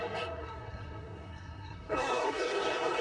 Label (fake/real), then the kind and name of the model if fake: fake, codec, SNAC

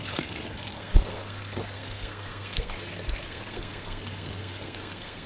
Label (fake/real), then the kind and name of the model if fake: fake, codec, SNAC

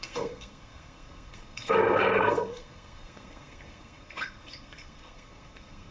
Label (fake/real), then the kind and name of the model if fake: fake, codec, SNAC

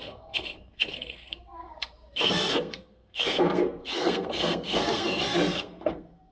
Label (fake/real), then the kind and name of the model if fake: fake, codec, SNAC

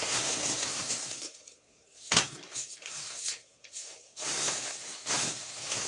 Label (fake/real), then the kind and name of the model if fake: fake, codec, SNAC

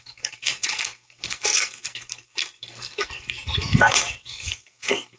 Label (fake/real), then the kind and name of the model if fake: fake, codec, SNAC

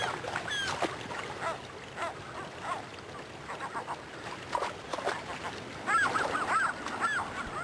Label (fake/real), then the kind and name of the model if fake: real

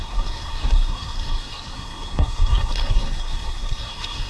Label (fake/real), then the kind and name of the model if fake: fake, codec, SNAC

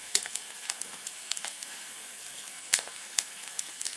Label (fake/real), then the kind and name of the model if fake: fake, codec, SNAC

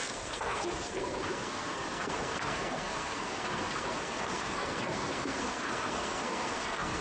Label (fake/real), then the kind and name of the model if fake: fake, codec, SNAC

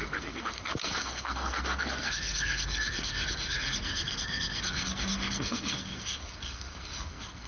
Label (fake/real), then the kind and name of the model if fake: fake, codec, SNAC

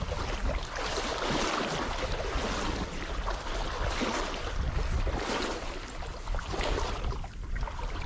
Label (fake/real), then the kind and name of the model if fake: real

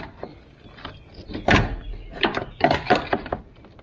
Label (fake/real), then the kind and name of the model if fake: real